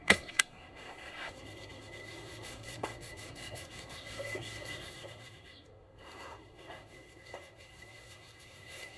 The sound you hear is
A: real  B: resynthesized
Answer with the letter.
B